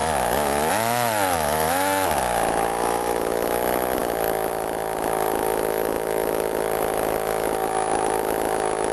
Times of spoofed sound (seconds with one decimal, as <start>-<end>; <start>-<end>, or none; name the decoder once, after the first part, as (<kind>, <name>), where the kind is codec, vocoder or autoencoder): 0.0-8.9 (autoencoder, DAC-VAE)